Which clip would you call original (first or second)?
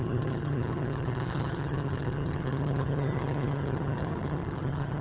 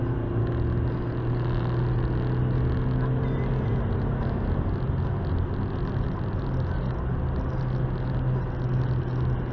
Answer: second